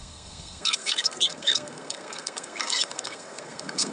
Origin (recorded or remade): remade